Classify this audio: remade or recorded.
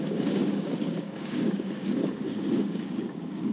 remade